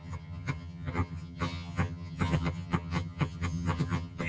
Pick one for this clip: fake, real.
fake